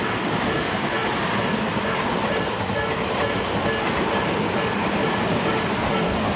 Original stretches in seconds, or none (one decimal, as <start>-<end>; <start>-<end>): 0.0-6.4